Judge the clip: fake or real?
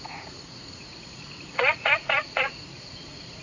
fake